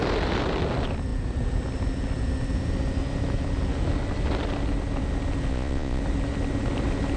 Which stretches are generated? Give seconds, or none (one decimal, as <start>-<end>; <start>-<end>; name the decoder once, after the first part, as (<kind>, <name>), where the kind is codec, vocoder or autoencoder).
5.5-6.0 (vocoder, Vocos)